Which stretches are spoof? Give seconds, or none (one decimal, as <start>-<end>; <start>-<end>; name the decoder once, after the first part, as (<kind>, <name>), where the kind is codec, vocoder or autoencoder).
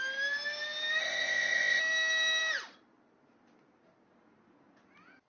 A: 1.0-1.8 (codec, ZipCodec)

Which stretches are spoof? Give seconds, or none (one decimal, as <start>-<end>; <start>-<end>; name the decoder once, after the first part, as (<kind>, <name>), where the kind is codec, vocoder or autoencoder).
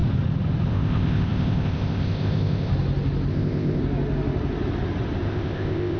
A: 0.7-2.7 (codec, ZipCodec); 3.3-3.8; 5.3-6.0